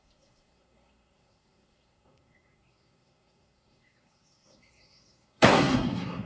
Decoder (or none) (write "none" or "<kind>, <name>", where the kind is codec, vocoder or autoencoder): codec, SNAC